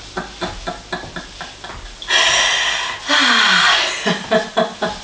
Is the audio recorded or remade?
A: recorded